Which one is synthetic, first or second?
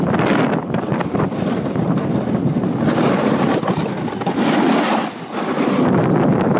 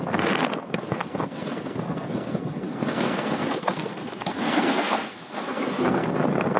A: second